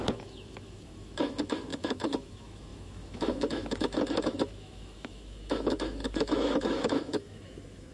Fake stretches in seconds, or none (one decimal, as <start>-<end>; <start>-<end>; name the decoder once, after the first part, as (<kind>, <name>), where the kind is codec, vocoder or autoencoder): 0.0-7.9 (autoencoder, DAC-VAE)